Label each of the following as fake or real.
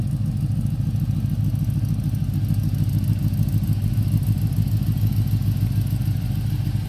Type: real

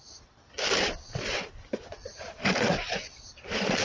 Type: real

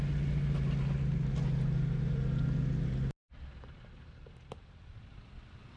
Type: real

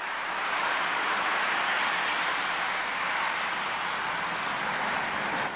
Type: fake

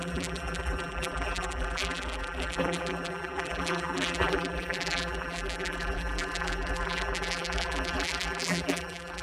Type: fake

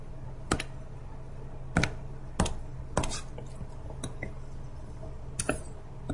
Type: real